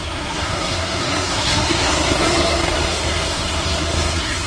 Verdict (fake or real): fake